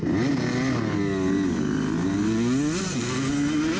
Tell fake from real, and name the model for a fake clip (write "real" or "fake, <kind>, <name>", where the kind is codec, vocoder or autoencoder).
real